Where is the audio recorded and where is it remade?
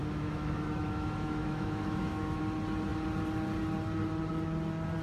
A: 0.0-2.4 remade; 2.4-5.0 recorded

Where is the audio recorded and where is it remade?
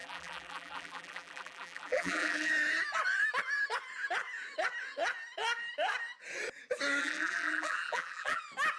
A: 0.0-2.5 remade; 2.5-7.0 recorded; 7.0-8.4 remade; 8.4-8.8 recorded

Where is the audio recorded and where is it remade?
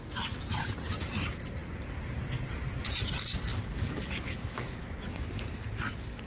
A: 0.0-3.5 recorded; 3.5-4.9 remade; 4.9-6.3 recorded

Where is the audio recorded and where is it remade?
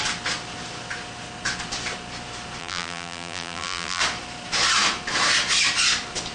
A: 0.0-2.6 recorded; 2.6-4.0 remade; 4.0-6.3 recorded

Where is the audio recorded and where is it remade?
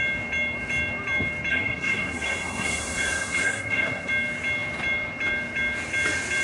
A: 0.0-1.5 recorded; 1.5-4.1 remade; 4.1-6.4 recorded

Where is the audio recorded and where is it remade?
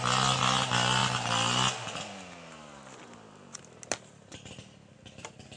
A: 0.0-5.6 recorded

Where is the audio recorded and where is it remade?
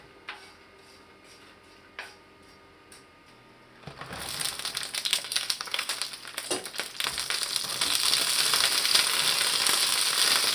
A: 0.0-5.1 recorded; 5.1-5.9 remade; 5.9-10.5 recorded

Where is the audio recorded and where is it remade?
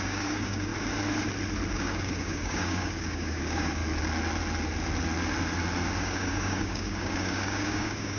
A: 0.0-0.7 remade; 0.7-1.7 recorded; 1.7-3.8 remade; 3.8-6.0 recorded; 6.0-8.2 remade